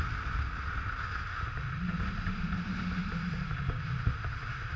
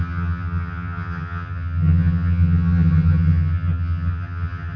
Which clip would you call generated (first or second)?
second